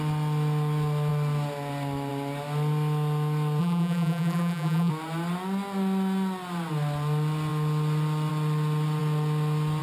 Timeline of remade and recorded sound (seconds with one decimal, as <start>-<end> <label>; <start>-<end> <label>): 0.0-3.6 recorded; 3.6-4.9 remade; 4.9-9.8 recorded

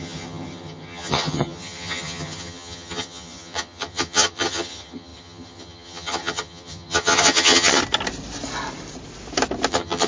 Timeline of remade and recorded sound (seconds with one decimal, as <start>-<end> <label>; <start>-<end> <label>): 0.0-7.8 remade; 7.8-9.7 recorded; 9.7-10.1 remade

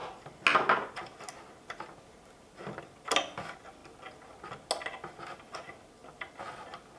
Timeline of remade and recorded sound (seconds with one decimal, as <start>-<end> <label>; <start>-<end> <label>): 0.0-7.0 recorded

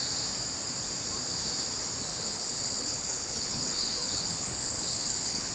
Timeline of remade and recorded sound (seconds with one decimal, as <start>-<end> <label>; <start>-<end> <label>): 0.0-2.1 recorded; 2.1-5.5 remade

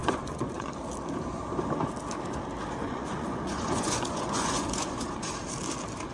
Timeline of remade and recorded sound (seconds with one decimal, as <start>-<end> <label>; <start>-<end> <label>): 0.0-0.7 remade; 0.7-2.8 recorded; 2.8-5.3 remade; 5.3-6.1 recorded

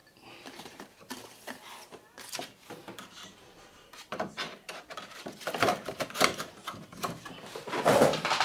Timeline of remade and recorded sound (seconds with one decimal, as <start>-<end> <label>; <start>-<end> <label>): 0.0-1.1 remade; 1.1-2.8 recorded; 2.8-7.8 remade; 7.8-8.4 recorded

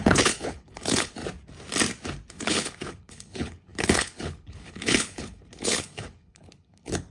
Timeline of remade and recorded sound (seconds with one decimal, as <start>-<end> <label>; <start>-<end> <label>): 0.0-1.2 remade; 1.2-2.3 recorded; 2.3-7.1 remade

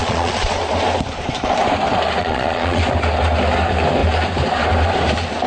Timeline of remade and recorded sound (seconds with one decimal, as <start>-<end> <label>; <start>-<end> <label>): 0.0-0.5 remade; 0.5-2.2 recorded; 2.2-2.8 remade; 2.8-5.5 recorded